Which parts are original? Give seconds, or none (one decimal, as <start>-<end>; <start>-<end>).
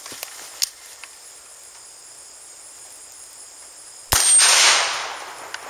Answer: 0.0-5.7